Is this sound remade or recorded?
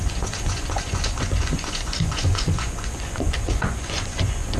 remade